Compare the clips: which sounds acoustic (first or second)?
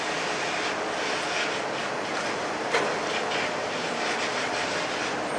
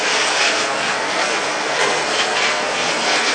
first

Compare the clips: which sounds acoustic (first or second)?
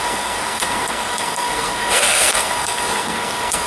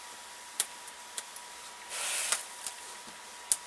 second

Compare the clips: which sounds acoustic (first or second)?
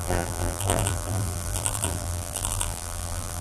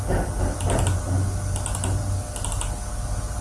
second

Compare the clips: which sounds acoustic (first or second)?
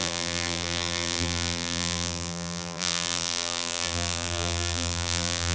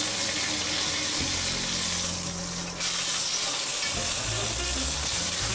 second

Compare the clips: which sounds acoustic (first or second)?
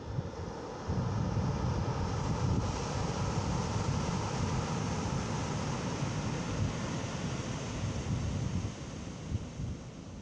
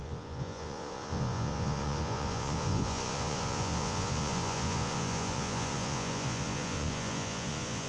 first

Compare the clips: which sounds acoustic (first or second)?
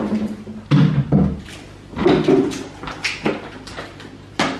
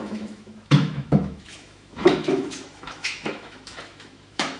first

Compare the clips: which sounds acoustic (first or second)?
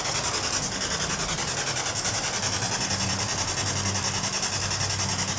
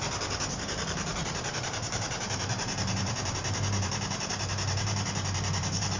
first